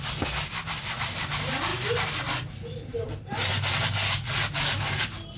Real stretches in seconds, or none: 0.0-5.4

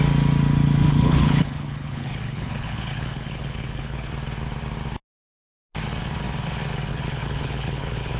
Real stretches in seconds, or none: 0.0-0.9; 4.1-6.9

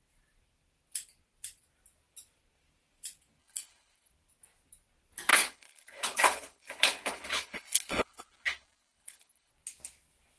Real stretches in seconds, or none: 0.0-3.4; 4.1-5.3; 9.5-10.4

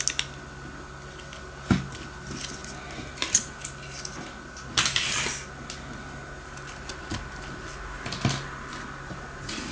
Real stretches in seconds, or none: 0.0-9.7

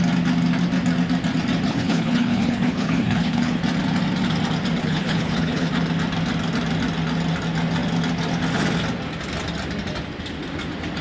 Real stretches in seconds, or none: 0.0-1.7; 3.6-4.8; 5.7-11.0

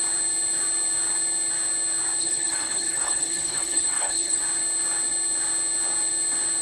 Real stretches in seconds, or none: 0.0-2.2; 4.4-6.6